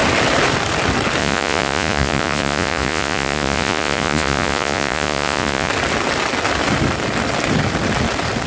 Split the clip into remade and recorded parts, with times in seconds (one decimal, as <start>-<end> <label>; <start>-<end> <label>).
0.0-1.2 recorded; 1.2-5.7 remade; 5.7-8.5 recorded